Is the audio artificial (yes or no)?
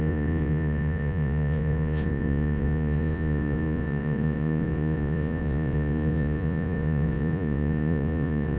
yes